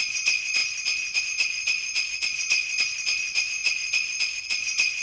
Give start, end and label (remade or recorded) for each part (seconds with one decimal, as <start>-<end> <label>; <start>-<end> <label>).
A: 0.0-5.0 remade